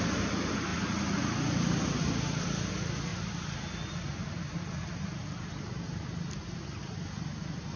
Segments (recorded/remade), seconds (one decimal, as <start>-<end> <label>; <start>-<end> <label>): 0.0-0.7 recorded; 0.7-2.5 remade; 2.5-3.1 recorded; 3.1-3.6 remade; 3.6-4.1 recorded; 4.1-5.2 remade; 5.2-7.8 recorded